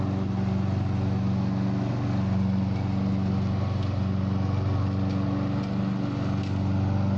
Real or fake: real